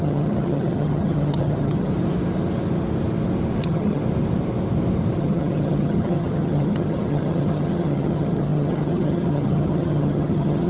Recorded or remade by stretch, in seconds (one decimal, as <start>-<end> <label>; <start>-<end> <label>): 0.0-1.9 remade; 1.9-3.6 recorded; 3.6-4.0 remade; 4.0-5.2 recorded; 5.2-10.7 remade